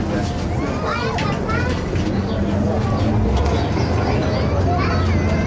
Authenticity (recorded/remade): recorded